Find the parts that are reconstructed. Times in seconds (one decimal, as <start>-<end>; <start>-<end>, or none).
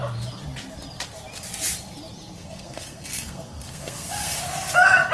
2.4-4.4